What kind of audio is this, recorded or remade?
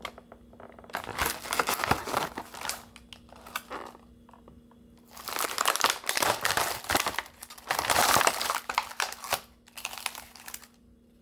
recorded